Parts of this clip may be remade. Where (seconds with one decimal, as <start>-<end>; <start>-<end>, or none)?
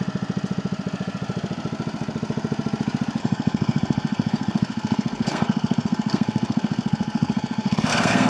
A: 3.2-8.3